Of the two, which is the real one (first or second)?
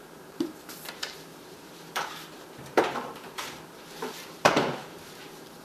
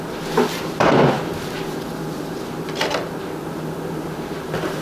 second